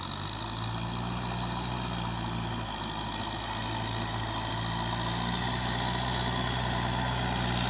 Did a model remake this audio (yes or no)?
no